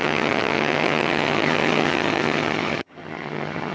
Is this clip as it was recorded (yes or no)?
no